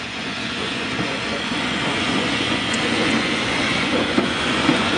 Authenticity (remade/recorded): remade